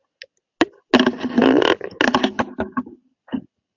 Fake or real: real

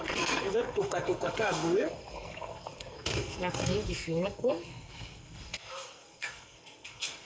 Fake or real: fake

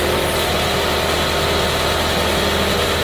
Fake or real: real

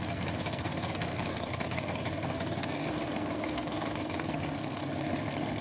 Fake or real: fake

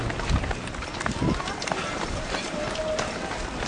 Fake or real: real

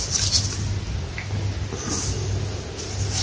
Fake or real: real